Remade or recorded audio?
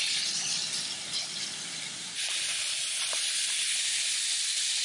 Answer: recorded